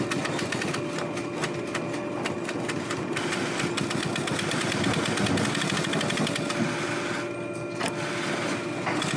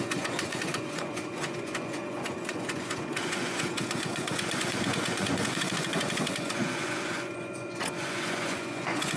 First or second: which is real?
first